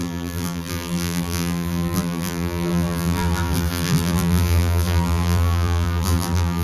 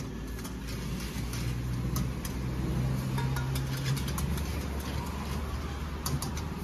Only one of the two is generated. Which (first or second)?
first